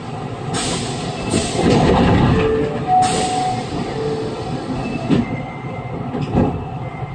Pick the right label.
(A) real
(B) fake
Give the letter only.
A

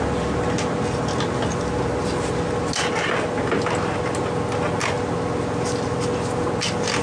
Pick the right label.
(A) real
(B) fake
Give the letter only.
A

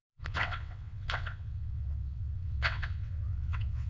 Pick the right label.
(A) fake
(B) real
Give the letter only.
A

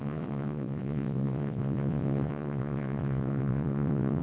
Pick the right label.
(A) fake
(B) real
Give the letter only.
A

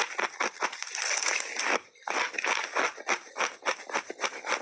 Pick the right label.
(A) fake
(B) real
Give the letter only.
B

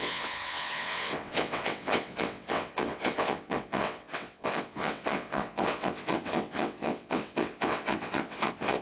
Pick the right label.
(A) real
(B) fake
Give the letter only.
B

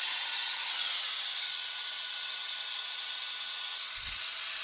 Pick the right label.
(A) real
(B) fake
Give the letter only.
B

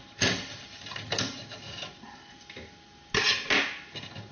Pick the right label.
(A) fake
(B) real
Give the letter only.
B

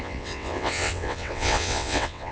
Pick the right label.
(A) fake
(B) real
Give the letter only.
A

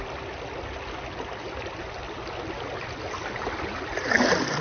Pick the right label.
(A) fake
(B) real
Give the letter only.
B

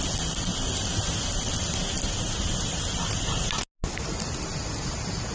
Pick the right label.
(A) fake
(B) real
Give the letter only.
B